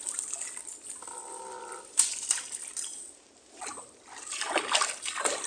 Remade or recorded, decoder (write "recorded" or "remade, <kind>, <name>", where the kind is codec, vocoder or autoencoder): recorded